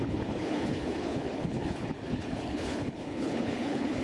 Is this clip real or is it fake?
fake